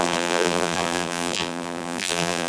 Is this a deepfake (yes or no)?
yes